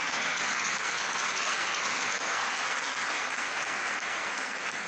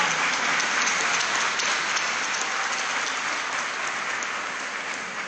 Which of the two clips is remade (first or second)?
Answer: first